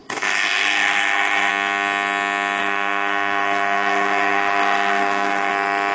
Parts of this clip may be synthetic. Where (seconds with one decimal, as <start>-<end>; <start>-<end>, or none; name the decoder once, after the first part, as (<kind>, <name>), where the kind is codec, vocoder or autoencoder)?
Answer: 0.0-1.5 (codec, SNAC); 2.6-5.5